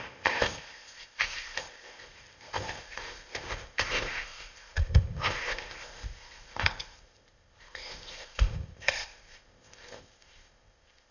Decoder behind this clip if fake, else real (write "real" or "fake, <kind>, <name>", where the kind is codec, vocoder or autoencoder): fake, codec, ZipCodec